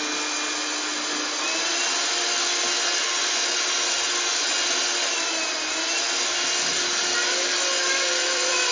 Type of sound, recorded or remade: recorded